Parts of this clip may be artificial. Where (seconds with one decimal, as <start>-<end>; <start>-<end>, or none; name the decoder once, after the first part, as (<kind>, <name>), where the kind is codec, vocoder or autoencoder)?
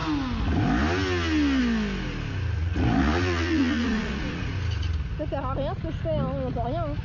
2.6-4.5 (vocoder, Vocos)